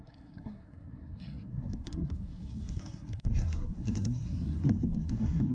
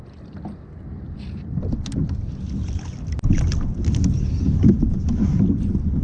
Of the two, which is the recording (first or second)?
second